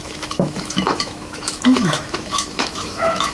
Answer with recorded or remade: remade